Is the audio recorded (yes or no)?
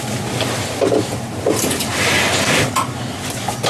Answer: yes